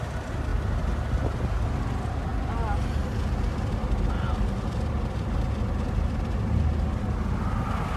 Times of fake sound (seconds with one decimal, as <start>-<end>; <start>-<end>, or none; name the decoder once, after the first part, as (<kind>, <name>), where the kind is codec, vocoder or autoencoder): none